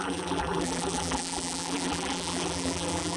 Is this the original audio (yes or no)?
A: no